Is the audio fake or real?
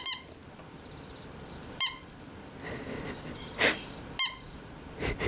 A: real